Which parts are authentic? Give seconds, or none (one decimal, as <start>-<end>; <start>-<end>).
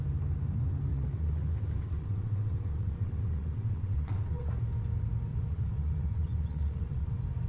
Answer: 0.0-0.9; 4.5-5.3; 7.1-7.5